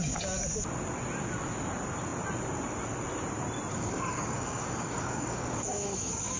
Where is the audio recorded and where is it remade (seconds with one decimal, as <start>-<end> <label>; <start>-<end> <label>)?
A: 0.0-3.7 recorded; 3.7-6.4 remade